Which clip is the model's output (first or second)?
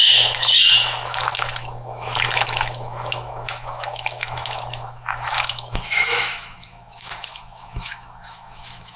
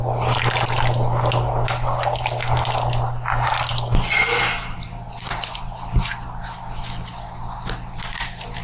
first